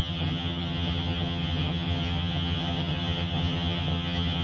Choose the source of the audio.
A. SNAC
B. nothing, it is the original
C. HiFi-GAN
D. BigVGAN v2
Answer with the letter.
C